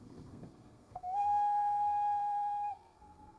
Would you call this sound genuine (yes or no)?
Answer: no